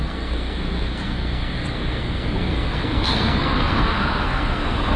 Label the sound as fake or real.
fake